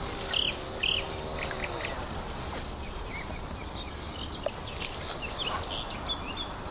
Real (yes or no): yes